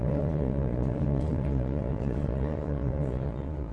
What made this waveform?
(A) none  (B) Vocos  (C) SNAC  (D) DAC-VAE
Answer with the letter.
B